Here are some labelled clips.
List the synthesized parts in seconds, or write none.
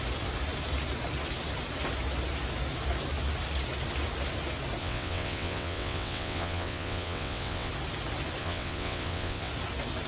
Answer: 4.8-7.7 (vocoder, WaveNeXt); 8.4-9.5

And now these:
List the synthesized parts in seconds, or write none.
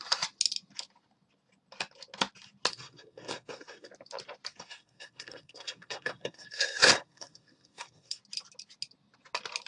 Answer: 2.7-3.9 (codec, SNAC); 4.5-8.2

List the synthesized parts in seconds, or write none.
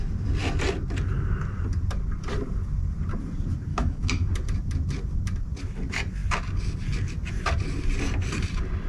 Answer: 3.7-4.3 (autoencoder, DAC-VAE)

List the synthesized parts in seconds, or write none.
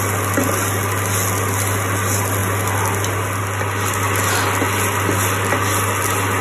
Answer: none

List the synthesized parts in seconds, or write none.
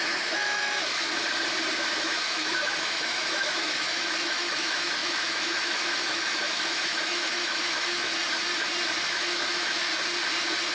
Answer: 0.0-0.8 (autoencoder, DAC-VAE); 2.0-8.1; 9.1-9.9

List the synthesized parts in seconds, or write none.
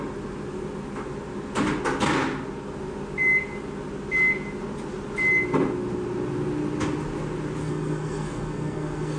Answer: 7.6-9.2 (codec, SNAC)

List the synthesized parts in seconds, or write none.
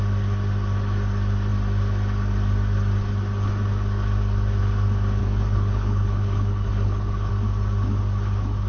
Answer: 5.2-7.3 (codec, HILCodec)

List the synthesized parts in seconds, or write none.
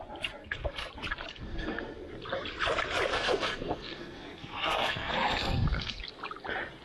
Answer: 0.4-0.9 (codec, SNAC); 1.3-2.1; 3.1-6.0